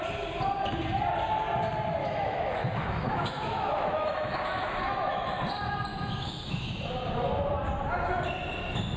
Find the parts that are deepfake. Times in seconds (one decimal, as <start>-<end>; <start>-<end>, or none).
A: 2.0-5.4; 5.9-6.9